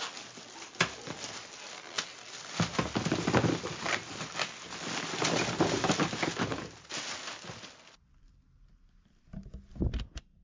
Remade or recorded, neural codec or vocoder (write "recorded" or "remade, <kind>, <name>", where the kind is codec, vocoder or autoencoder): recorded